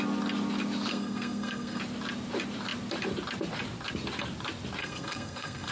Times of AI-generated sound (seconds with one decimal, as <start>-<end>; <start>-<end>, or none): 0.9-1.8; 4.8-5.7